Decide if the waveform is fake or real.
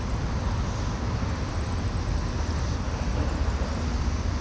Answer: real